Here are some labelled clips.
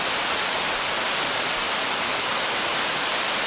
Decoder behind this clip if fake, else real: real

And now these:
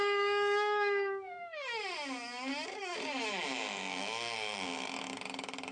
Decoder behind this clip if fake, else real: fake, codec, DAC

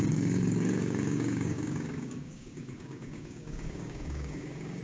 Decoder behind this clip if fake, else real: fake, codec, DAC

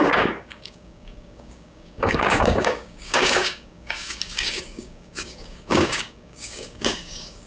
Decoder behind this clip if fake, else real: fake, codec, DAC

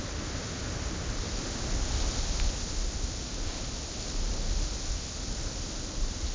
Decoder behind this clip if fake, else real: real